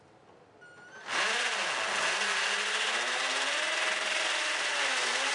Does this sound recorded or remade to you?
recorded